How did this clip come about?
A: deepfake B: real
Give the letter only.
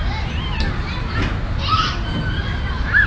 B